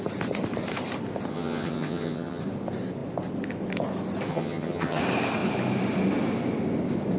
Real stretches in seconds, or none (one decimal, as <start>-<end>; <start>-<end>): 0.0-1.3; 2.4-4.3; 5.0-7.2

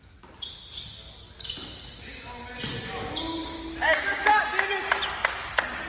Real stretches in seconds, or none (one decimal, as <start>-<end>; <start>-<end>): 0.0-5.9

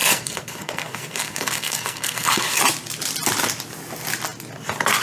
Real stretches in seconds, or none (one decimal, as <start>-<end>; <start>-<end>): 2.6-5.0

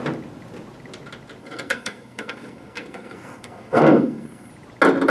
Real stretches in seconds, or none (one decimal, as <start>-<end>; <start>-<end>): 0.0-1.4; 4.5-5.1